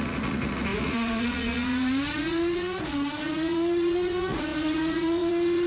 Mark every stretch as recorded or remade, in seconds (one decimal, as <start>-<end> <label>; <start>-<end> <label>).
0.0-5.7 remade